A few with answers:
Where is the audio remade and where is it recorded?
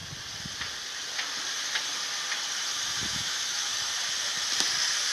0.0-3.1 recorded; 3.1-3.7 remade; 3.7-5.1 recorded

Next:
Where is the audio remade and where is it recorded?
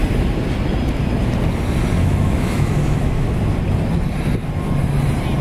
0.0-2.0 recorded; 2.0-3.4 remade; 3.4-5.4 recorded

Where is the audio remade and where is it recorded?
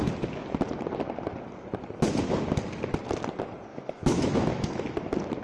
0.0-3.7 recorded; 3.7-4.8 remade; 4.8-5.4 recorded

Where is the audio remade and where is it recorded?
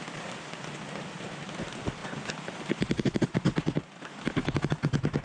0.0-5.2 recorded